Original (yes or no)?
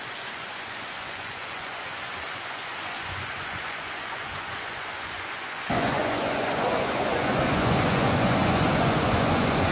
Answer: no